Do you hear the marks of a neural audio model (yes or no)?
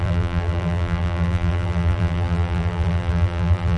yes